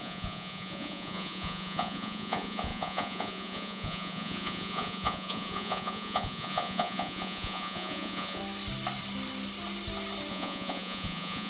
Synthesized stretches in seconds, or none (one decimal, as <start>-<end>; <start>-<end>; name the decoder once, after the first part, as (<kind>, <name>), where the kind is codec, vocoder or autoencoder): 0.0-8.4 (vocoder, Vocos); 10.3-11.5

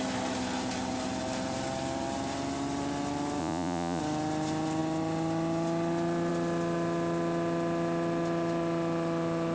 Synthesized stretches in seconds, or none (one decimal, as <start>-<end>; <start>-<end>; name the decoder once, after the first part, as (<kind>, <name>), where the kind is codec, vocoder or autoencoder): 3.4-4.0 (vocoder, Vocos)

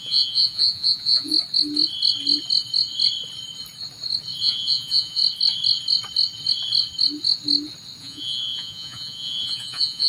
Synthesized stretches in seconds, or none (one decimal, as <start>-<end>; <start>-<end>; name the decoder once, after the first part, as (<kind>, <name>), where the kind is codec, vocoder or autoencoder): 0.0-1.3 (vocoder, Vocos); 4.4-5.2; 8.0-10.1

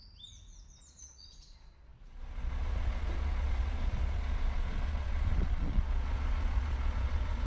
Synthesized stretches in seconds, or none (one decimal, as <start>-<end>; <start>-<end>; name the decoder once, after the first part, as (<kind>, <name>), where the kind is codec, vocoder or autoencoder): 0.8-7.5 (vocoder, Vocos)

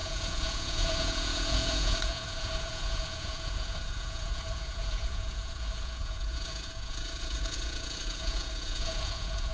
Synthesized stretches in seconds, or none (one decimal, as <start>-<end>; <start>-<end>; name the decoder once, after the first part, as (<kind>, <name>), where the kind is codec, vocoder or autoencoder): 0.0-9.5 (vocoder, Vocos)

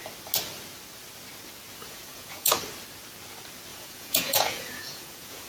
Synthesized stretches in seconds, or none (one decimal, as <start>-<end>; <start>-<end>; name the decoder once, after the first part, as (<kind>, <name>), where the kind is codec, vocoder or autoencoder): 1.8-2.6 (vocoder, Vocos); 3.7-5.5